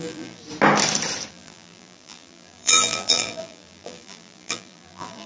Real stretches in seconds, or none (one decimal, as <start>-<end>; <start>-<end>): 0.4-1.3